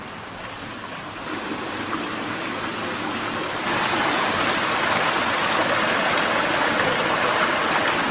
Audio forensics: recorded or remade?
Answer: recorded